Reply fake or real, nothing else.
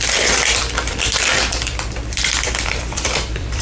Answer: fake